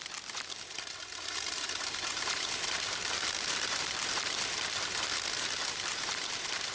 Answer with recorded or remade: remade